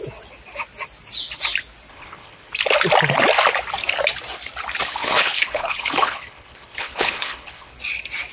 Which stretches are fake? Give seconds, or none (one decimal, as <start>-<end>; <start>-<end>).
1.9-2.5; 5.0-7.7